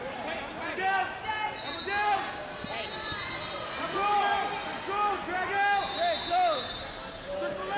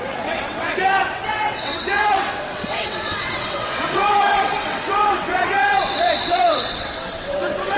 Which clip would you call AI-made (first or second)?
second